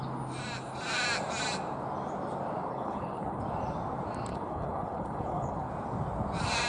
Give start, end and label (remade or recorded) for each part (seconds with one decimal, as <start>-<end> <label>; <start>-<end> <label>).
0.0-2.7 recorded; 2.7-3.4 remade; 3.4-4.3 recorded; 4.3-5.7 remade; 5.7-6.7 recorded